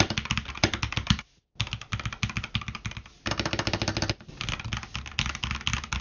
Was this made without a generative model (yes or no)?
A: yes